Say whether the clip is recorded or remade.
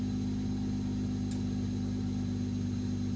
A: recorded